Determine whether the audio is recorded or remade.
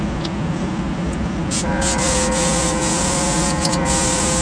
recorded